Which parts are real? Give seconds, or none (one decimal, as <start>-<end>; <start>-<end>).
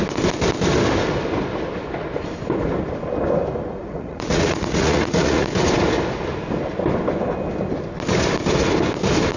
0.0-3.8; 5.5-9.4